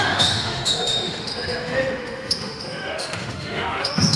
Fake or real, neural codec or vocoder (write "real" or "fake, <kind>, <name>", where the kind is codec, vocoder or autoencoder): fake, autoencoder, DAC-VAE